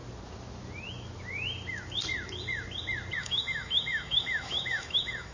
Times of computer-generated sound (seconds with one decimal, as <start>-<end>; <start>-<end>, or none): 3.2-5.3